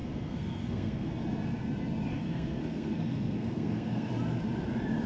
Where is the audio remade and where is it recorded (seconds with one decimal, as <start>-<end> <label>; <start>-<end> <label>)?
0.0-1.1 remade; 1.1-2.1 recorded; 2.1-4.1 remade; 4.1-5.1 recorded